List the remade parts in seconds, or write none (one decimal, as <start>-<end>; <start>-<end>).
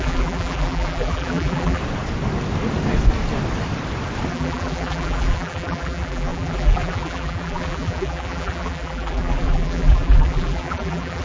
0.0-1.8; 4.3-11.2